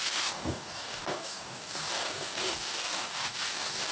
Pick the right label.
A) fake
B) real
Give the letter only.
A